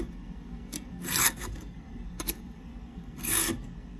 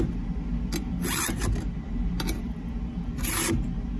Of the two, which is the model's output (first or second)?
first